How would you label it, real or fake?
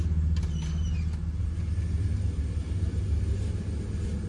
real